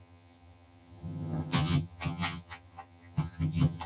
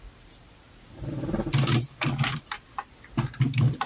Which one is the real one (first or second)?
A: second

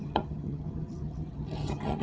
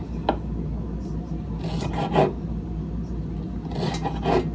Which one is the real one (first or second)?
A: second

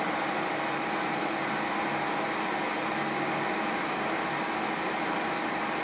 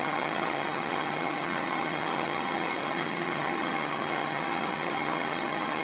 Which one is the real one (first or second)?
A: first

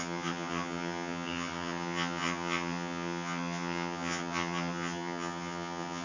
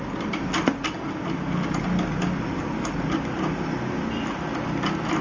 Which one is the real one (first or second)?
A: second